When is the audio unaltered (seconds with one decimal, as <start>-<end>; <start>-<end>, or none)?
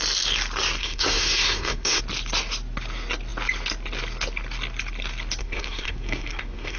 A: 0.0-0.8; 2.0-5.4